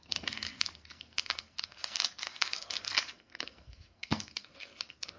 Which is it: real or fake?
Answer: fake